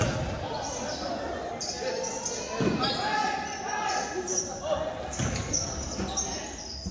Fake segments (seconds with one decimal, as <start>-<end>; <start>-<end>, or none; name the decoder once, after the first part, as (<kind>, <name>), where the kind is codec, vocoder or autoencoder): none